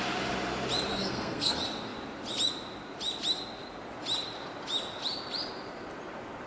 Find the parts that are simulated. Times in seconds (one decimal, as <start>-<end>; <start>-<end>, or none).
0.9-1.5